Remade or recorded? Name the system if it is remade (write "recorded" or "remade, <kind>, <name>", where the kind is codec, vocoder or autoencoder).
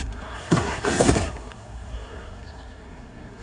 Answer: remade, codec, SNAC